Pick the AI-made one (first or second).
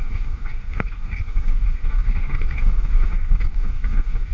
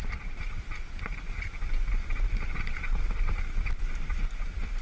first